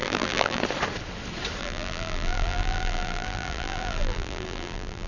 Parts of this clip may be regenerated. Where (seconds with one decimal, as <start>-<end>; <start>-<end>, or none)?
0.0-0.6; 1.6-5.1